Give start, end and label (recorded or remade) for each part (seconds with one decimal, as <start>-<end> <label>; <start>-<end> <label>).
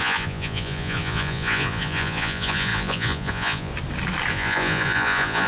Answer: 0.0-3.7 remade; 3.7-4.3 recorded; 4.3-5.5 remade